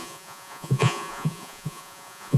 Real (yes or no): no